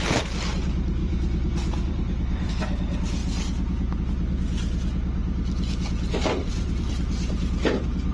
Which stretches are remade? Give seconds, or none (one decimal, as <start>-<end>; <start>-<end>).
1.0-2.5; 6.4-6.9